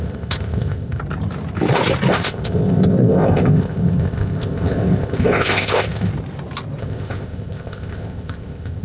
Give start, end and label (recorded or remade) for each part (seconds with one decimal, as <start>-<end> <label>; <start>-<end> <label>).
0.0-1.0 remade; 1.0-2.1 recorded; 2.1-6.1 remade; 6.1-6.8 recorded; 6.8-8.8 remade

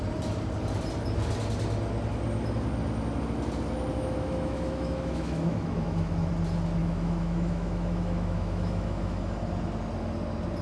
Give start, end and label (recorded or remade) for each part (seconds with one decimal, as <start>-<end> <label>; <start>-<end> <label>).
0.0-3.9 recorded; 3.9-6.3 remade; 6.3-6.8 recorded; 6.8-9.2 remade; 9.2-10.6 recorded

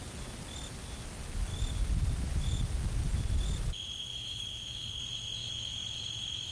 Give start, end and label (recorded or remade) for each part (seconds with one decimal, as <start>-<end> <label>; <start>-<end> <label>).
0.0-4.1 recorded; 4.1-4.9 remade; 4.9-5.4 recorded; 5.4-6.5 remade